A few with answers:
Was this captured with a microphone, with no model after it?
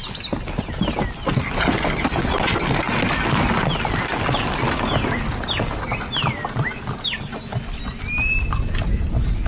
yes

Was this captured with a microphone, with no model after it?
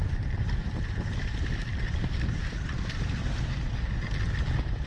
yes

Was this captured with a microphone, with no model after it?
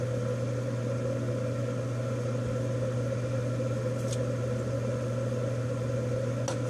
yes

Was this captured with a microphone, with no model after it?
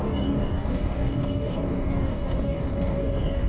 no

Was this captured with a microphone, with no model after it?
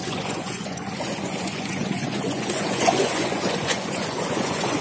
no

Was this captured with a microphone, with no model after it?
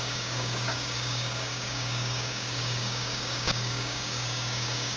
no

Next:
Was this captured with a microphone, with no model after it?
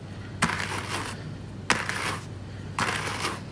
yes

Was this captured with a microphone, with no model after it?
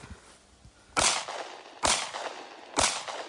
yes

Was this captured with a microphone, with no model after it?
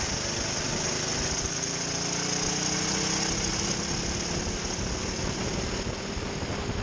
yes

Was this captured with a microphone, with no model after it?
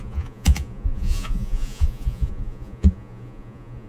no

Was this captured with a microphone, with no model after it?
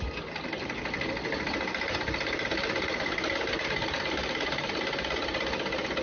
yes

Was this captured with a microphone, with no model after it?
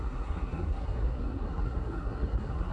no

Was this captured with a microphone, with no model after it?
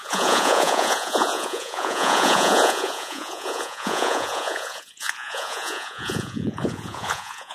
no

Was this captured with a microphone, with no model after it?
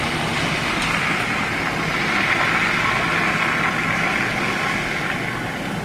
yes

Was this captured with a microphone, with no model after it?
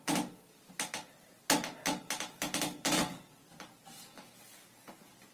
yes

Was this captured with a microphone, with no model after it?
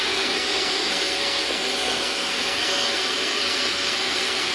no